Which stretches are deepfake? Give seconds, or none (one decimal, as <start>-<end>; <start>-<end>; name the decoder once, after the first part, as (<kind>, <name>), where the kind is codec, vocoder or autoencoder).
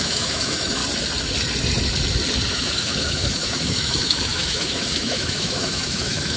0.0-0.8 (autoencoder, DAC-VAE); 2.5-6.4